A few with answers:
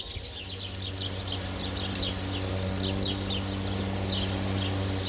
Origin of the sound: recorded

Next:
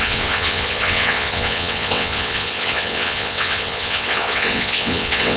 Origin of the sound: remade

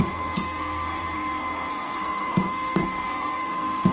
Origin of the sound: remade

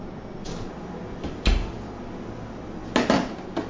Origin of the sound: recorded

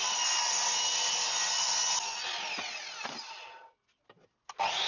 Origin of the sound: recorded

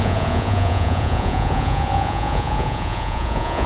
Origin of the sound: remade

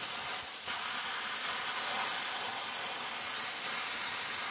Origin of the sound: recorded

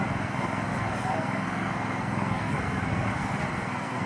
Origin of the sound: remade